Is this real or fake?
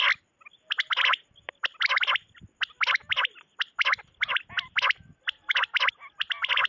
real